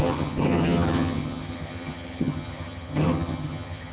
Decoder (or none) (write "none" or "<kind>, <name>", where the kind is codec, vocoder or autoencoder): vocoder, HiFi-GAN